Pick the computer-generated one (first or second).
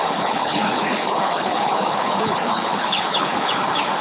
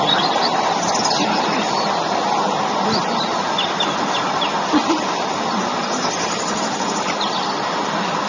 first